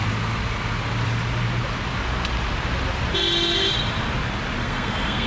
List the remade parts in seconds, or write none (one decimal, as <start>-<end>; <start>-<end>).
4.6-5.3